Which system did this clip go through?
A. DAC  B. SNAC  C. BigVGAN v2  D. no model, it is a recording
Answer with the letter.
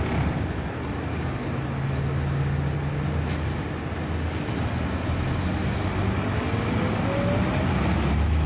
D